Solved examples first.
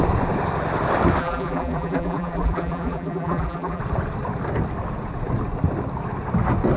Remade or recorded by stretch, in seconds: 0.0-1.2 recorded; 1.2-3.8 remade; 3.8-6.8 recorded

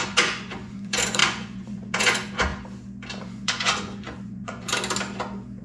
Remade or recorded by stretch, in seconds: 0.0-2.5 remade; 2.5-3.2 recorded; 3.2-4.7 remade; 4.7-5.6 recorded

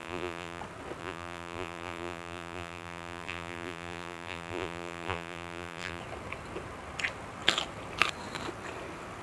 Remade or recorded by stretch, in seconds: 0.0-0.6 remade; 0.6-1.0 recorded; 1.0-6.0 remade; 6.0-9.2 recorded